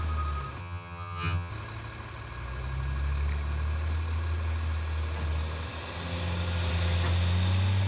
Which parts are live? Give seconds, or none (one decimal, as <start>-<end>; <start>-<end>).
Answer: 0.0-0.6; 1.5-7.9